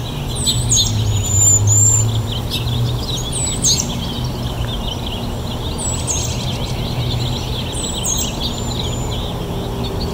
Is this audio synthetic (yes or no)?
no